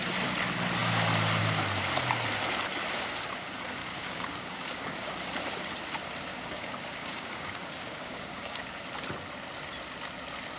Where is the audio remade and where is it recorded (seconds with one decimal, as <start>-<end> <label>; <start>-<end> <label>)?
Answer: 0.0-3.8 recorded; 3.8-5.2 remade; 5.2-6.3 recorded; 6.3-8.8 remade; 8.8-10.6 recorded